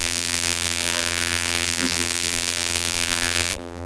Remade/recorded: remade